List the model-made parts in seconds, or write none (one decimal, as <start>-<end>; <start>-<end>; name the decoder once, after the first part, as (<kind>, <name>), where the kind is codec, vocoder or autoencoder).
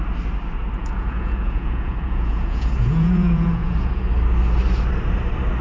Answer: 0.8-4.0 (vocoder, Vocos)